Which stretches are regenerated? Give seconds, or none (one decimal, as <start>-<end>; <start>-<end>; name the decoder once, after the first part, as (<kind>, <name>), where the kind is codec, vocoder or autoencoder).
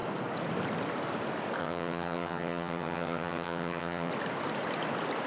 1.6-4.1 (vocoder, HiFi-GAN)